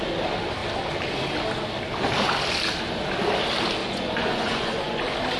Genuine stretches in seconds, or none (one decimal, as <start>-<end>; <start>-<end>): 0.0-3.8; 5.0-5.4